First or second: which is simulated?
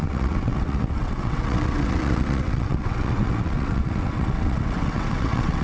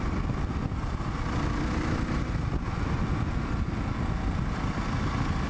first